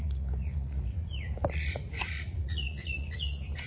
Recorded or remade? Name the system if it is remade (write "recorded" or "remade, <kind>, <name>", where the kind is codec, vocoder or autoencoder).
remade, vocoder, Vocos